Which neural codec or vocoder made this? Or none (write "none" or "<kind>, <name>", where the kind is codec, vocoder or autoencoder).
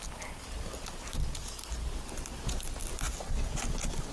none